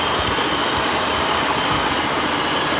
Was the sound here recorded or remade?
recorded